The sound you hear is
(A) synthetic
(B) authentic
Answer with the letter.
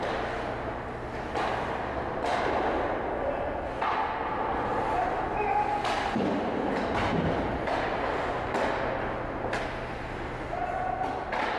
B